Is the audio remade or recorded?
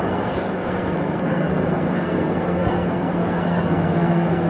remade